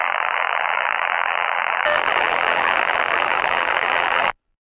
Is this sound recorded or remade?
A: remade